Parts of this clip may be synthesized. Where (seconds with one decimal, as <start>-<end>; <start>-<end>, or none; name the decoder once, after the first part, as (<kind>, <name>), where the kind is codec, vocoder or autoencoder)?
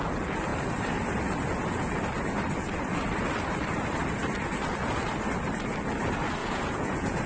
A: 6.4-7.3 (vocoder, Vocos)